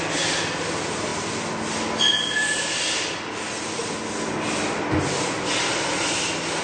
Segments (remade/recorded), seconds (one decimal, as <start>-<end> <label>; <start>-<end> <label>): 0.0-6.6 recorded